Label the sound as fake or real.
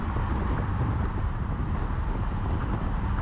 real